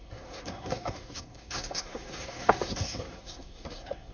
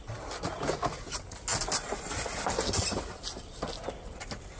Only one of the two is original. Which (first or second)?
second